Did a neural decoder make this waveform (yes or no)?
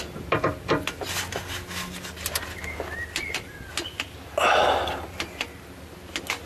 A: no